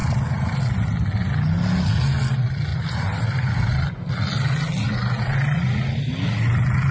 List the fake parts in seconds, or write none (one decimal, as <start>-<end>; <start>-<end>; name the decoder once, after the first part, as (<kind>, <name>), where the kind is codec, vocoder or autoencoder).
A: 0.0-0.6 (vocoder, BigVGAN v2); 2.7-3.7